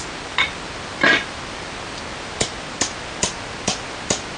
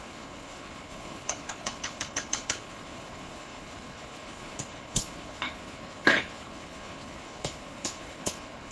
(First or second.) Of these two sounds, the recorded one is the first